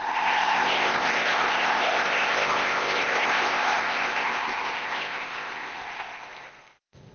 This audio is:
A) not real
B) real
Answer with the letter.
A